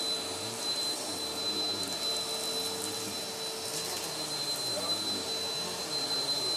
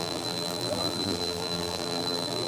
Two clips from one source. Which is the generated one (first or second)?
second